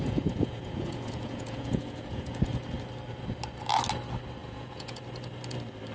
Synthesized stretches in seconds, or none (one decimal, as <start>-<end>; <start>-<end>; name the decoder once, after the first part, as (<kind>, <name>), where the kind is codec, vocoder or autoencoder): 0.0-2.4 (vocoder, Vocos); 4.4-5.0